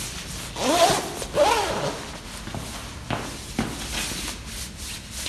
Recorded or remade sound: recorded